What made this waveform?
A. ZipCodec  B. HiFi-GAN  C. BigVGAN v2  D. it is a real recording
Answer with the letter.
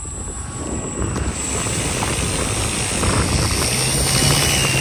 D